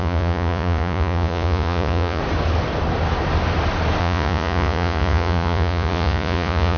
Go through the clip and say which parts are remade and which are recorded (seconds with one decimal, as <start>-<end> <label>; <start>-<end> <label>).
0.0-2.2 remade; 2.2-4.0 recorded; 4.0-6.8 remade